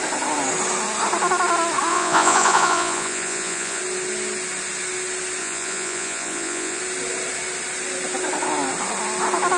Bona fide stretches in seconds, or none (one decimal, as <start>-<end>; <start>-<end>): 0.0-1.9; 3.8-5.4; 6.8-9.6